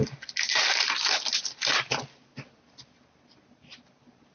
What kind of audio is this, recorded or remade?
recorded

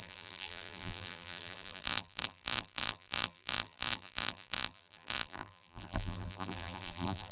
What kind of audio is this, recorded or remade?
remade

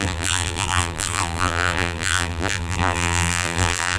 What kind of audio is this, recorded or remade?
remade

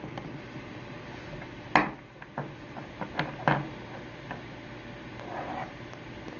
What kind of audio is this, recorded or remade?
recorded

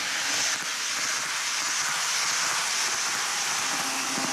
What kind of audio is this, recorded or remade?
recorded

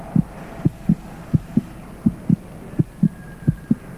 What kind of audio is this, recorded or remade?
recorded